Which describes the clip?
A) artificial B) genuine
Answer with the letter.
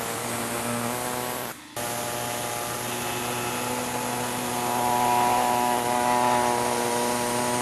B